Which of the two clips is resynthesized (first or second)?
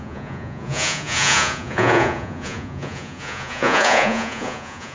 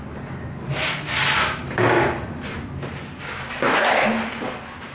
first